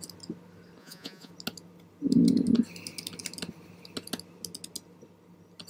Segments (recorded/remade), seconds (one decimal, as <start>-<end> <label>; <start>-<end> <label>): 0.0-0.8 recorded; 0.8-1.3 remade; 1.3-5.7 recorded

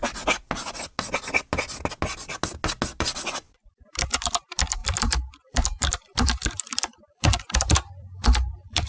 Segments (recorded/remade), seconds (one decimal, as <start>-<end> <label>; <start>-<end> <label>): 0.0-3.0 recorded; 3.0-8.9 remade